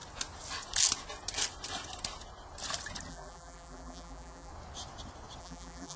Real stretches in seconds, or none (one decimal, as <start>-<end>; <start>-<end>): 0.0-3.1; 4.5-5.4